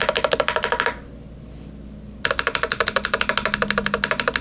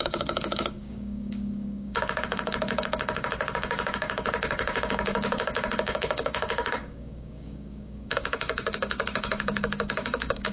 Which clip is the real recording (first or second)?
first